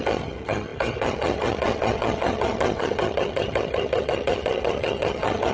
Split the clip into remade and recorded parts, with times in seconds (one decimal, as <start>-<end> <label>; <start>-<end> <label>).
0.0-5.5 remade